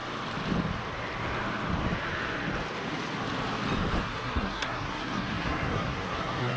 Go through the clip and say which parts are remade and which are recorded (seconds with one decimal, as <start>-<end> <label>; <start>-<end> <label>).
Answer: 0.0-4.0 recorded; 4.0-6.6 remade